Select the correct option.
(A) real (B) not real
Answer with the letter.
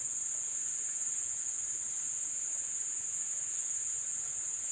B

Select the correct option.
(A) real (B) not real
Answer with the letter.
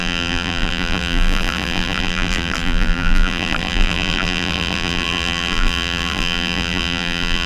B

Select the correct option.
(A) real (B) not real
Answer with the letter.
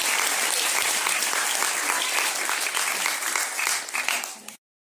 A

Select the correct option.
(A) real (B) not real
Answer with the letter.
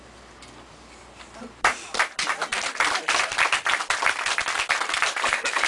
A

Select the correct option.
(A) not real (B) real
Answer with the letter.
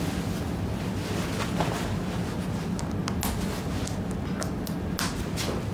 B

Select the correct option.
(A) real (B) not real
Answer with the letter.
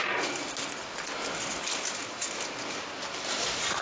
A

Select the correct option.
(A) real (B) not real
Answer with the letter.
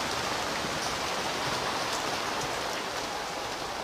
A